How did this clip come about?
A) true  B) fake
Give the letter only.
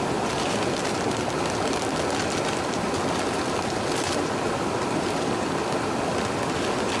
A